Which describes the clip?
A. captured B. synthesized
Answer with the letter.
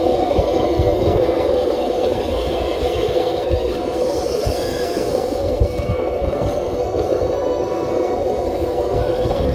B